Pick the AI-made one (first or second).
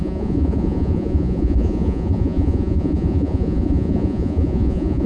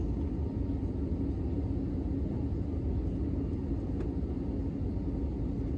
first